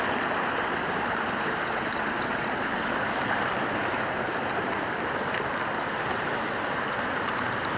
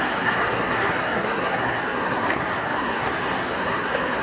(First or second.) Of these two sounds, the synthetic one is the second